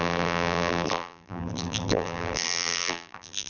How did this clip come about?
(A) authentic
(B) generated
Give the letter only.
B